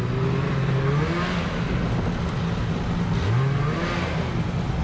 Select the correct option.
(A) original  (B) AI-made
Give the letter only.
A